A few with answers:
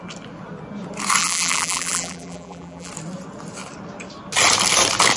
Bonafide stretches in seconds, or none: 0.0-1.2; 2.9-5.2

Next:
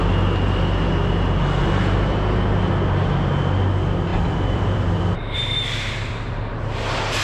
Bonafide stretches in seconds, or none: 0.0-4.1; 6.4-7.2

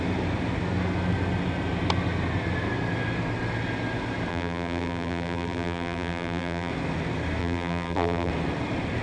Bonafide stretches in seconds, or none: 0.0-4.3; 6.7-7.4; 8.3-9.0

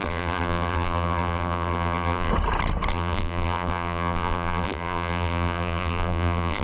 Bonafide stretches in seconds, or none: 2.3-2.9

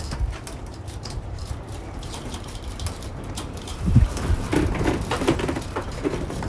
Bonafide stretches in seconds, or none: 4.5-5.0

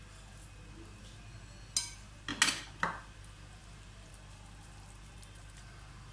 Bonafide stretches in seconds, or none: 0.0-6.1